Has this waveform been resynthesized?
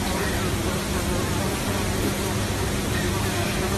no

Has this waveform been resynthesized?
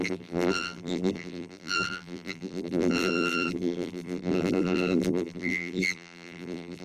yes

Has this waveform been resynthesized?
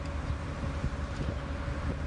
yes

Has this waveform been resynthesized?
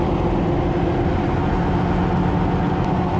no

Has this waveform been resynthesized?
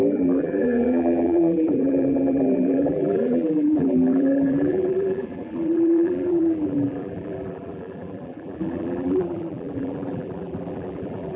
yes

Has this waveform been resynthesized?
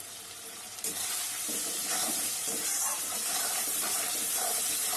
yes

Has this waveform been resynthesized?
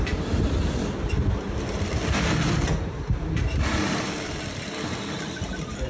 no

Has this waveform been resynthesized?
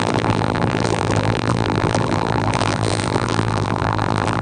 yes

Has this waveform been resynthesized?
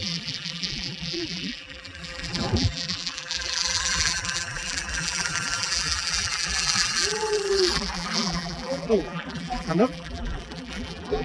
yes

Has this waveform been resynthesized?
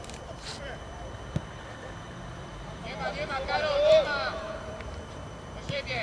yes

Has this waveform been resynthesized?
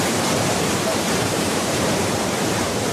yes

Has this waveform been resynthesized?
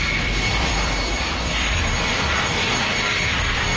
yes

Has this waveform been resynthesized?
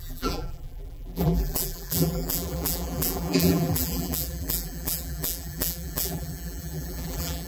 yes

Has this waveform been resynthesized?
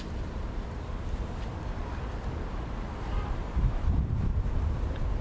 yes